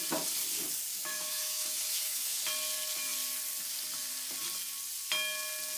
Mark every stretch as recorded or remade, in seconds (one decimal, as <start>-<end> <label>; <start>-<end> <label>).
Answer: 0.0-0.9 recorded; 0.9-2.4 remade; 2.4-5.8 recorded